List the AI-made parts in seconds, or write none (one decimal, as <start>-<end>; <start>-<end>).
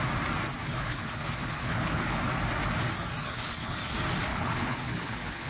0.6-2.2; 3.2-3.8; 4.3-5.5